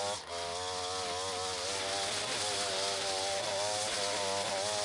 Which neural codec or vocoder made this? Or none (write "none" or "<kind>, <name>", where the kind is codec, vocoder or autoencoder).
none